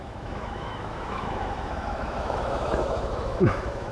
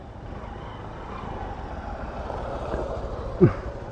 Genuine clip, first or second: second